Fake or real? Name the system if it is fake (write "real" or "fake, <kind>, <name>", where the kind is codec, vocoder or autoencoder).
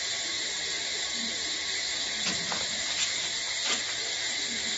real